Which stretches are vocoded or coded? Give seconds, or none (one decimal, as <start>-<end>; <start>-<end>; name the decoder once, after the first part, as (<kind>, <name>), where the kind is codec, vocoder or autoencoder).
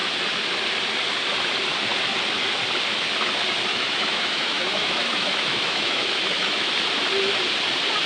3.7-6.7 (autoencoder, DAC-VAE)